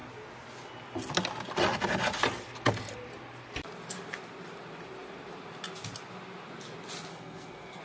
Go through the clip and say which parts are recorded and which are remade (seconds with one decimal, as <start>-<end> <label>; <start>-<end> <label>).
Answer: 0.0-7.1 recorded; 7.1-7.8 remade